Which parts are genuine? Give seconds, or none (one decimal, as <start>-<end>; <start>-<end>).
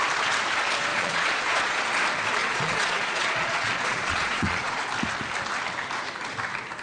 0.0-0.9; 1.8-2.4; 4.8-6.8